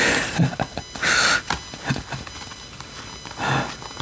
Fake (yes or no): no